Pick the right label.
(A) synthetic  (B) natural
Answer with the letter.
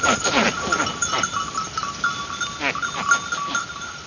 B